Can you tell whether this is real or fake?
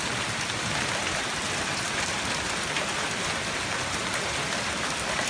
real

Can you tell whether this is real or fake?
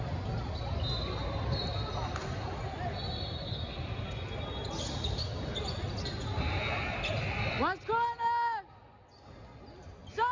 real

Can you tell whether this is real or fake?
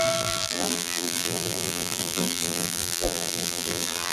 fake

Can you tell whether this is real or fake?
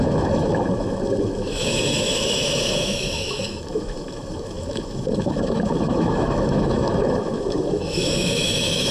fake